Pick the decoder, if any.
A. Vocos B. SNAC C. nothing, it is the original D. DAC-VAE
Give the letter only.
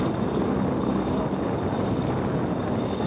C